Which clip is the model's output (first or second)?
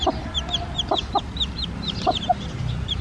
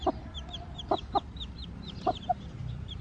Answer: second